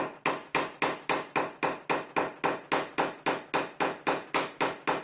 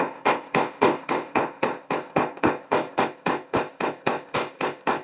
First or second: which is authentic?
first